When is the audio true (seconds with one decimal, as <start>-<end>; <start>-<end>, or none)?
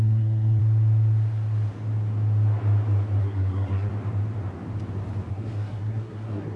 0.6-3.2; 3.9-5.3